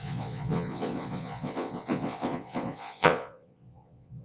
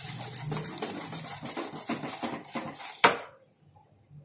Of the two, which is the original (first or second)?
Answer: second